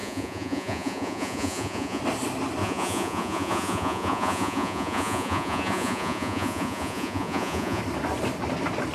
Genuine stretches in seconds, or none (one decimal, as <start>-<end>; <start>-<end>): 2.0-2.6; 7.8-8.9